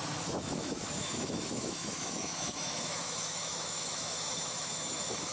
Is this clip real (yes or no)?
no